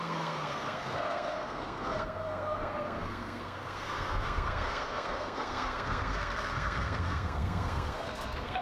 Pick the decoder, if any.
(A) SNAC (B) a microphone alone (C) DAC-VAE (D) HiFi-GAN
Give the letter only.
A